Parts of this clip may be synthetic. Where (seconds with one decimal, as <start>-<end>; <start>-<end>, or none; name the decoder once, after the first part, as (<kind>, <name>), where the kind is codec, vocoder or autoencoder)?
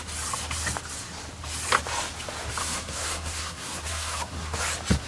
2.6-4.6 (codec, SNAC)